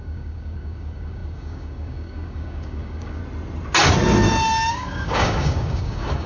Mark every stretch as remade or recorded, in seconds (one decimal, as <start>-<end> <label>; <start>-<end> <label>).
0.0-3.2 remade; 3.2-4.7 recorded; 4.7-6.3 remade

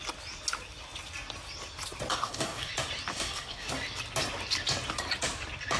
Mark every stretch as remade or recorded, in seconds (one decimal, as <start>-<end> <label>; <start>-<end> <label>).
0.0-2.1 recorded; 2.1-2.7 remade; 2.7-3.1 recorded; 3.1-3.7 remade; 3.7-5.8 recorded

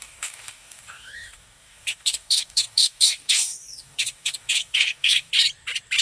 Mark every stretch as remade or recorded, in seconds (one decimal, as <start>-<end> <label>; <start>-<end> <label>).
0.0-5.3 remade; 5.3-6.0 recorded

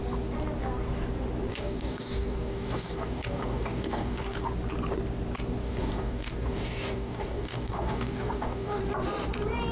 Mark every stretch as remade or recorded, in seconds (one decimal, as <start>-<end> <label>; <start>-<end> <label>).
0.0-1.5 recorded; 1.5-4.4 remade; 4.4-5.6 recorded; 5.6-8.8 remade; 8.8-9.7 recorded

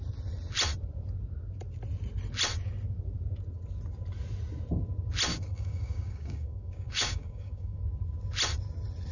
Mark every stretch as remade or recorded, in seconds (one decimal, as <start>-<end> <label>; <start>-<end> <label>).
0.0-5.3 recorded; 5.3-7.8 remade; 7.8-9.1 recorded

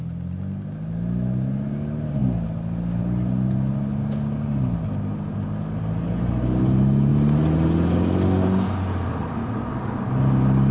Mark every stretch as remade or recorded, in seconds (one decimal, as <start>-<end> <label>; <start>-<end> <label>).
0.0-10.7 recorded

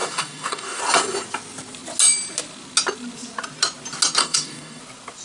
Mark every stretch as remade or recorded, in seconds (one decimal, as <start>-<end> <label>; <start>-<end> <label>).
0.0-0.8 remade; 0.8-4.2 recorded; 4.2-4.8 remade; 4.8-5.2 recorded

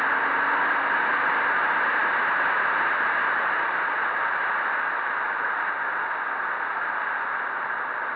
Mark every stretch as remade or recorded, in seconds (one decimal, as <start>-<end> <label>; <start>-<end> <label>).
0.0-8.2 recorded